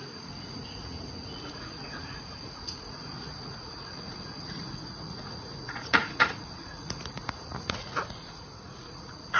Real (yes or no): no